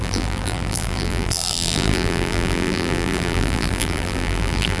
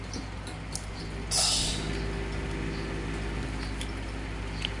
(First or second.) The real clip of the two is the second